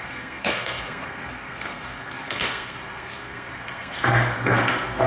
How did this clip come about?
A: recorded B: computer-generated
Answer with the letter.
B